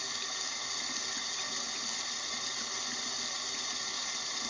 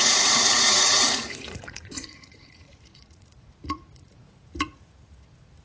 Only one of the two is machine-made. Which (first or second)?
second